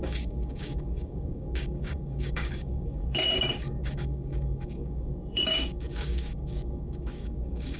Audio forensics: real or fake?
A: fake